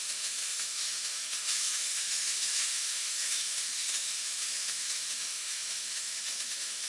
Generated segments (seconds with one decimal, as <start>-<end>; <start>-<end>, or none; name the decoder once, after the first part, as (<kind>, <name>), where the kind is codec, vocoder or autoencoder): 0.0-6.9 (autoencoder, DAC-VAE)